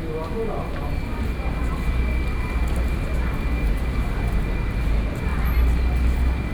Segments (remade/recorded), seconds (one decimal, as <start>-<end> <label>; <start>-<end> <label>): 0.0-6.5 recorded